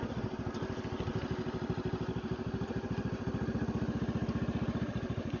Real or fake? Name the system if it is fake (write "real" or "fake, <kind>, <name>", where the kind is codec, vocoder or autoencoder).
real